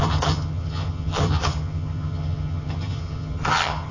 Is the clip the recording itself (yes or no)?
no